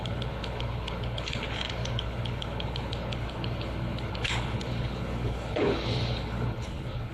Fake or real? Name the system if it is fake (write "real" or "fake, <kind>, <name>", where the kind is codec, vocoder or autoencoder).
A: fake, codec, HILCodec